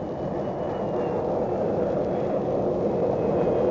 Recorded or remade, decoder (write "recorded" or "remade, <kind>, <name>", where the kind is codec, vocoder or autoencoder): recorded